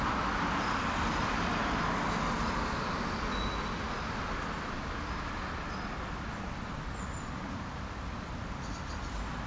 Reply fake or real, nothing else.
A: real